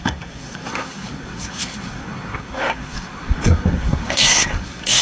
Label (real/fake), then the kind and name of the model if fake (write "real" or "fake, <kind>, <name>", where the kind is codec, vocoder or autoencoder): fake, codec, SNAC